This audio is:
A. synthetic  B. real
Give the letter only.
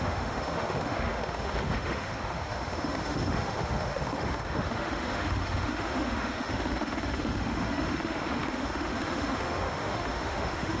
A